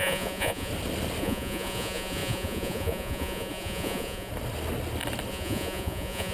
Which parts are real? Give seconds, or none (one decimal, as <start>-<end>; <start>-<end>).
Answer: 0.7-1.2; 4.3-5.3